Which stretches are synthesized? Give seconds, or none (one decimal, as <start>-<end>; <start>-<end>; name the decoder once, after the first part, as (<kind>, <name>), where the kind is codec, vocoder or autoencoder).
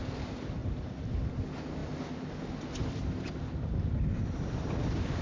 4.2-5.2 (vocoder, BigVGAN v2)